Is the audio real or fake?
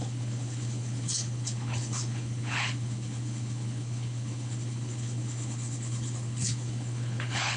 fake